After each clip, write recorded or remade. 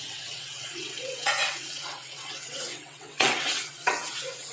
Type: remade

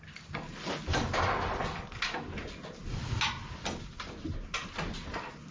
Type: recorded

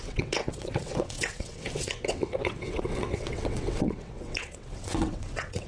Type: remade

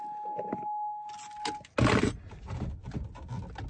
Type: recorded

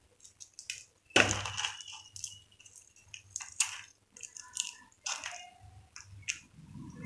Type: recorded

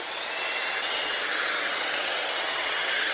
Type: remade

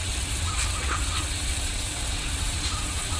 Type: remade